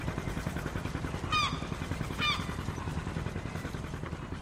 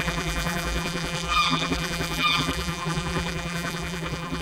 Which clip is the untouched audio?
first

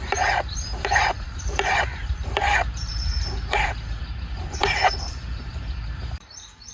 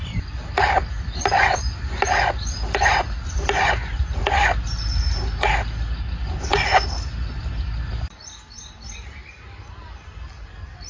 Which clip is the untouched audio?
second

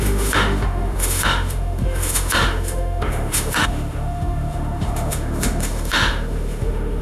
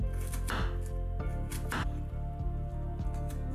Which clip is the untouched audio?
second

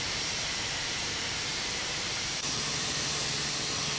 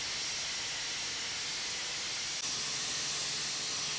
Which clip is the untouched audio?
second